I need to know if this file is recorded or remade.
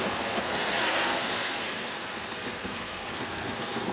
remade